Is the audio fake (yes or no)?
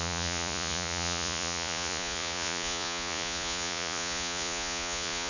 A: yes